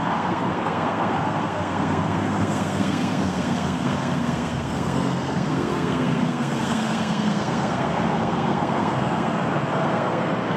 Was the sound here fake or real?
fake